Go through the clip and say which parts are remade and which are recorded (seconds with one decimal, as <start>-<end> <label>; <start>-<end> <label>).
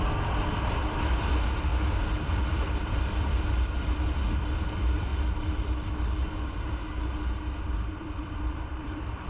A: 0.0-5.1 remade; 5.1-8.0 recorded; 8.0-9.3 remade